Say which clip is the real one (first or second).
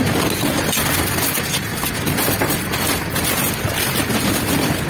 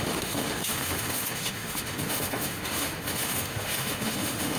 first